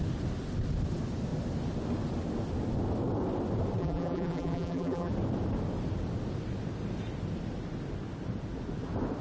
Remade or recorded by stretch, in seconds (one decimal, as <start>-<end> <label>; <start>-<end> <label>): 0.0-3.8 recorded; 3.8-5.1 remade; 5.1-9.2 recorded

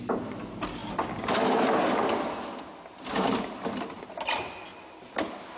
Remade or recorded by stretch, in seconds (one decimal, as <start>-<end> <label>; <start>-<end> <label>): 0.0-5.6 recorded